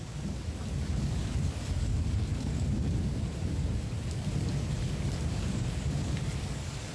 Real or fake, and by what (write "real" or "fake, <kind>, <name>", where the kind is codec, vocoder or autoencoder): fake, codec, DAC